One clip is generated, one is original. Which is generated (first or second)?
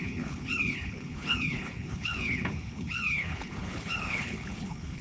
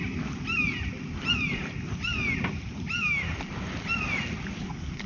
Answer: first